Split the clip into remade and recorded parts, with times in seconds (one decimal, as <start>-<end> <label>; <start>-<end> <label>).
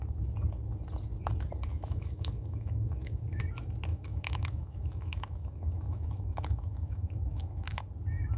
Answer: 0.0-1.7 recorded; 1.7-3.4 remade; 3.4-3.9 recorded; 3.9-7.8 remade; 7.8-8.4 recorded